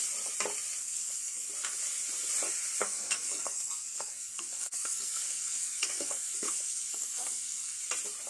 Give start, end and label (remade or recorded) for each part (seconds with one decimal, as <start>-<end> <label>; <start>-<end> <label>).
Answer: 0.0-0.8 recorded; 0.8-1.5 remade; 1.5-2.8 recorded; 2.8-7.8 remade; 7.8-8.3 recorded